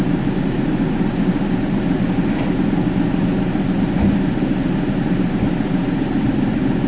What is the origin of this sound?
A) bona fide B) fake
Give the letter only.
A